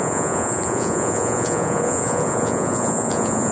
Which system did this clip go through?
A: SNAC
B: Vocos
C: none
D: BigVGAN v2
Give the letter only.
B